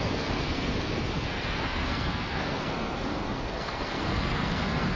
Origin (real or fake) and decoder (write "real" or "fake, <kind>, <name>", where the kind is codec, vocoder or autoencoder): fake, codec, SNAC